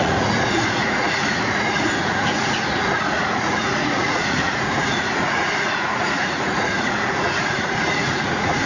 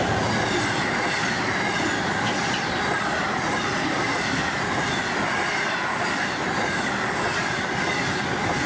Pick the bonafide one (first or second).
second